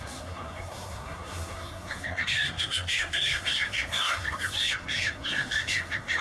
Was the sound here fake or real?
fake